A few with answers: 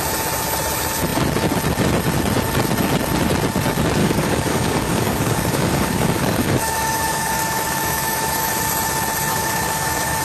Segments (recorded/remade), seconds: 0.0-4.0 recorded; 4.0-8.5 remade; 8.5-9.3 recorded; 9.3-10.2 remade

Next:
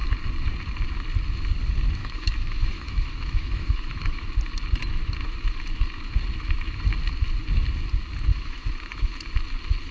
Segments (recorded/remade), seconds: 0.0-2.0 recorded; 2.0-4.3 remade; 4.3-8.3 recorded; 8.3-9.1 remade; 9.1-9.9 recorded

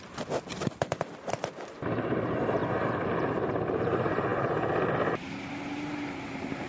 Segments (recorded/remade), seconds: 0.0-6.7 recorded

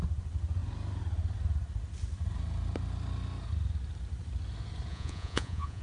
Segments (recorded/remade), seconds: 0.0-4.9 recorded; 4.9-5.8 remade

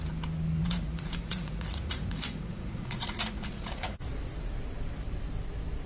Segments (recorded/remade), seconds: 0.0-0.6 recorded; 0.6-4.1 remade; 4.1-5.9 recorded

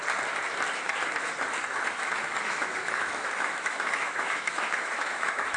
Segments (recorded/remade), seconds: 0.0-2.1 recorded; 2.1-5.6 remade

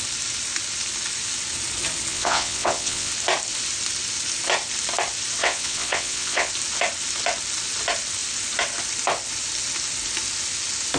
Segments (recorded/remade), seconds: 0.0-2.1 recorded; 2.1-3.1 remade; 3.1-5.4 recorded; 5.4-6.5 remade; 6.5-11.0 recorded